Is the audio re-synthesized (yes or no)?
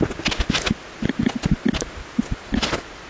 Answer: no